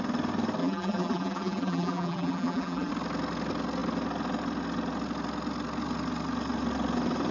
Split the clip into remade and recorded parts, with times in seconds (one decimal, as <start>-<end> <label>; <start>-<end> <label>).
0.0-0.6 recorded; 0.6-2.9 remade; 2.9-7.3 recorded